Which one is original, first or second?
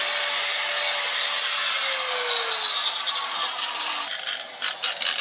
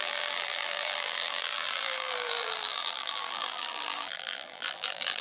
first